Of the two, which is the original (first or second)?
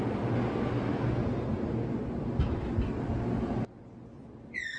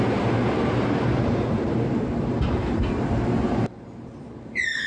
first